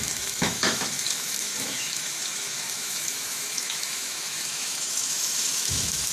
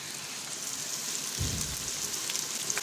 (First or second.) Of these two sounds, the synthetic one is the first